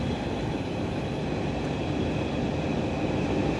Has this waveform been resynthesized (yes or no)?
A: no